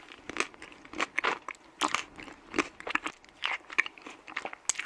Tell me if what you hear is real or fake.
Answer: real